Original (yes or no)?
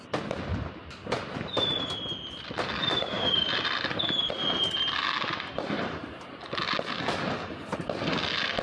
yes